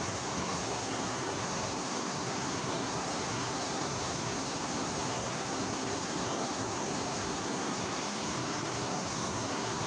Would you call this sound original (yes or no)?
no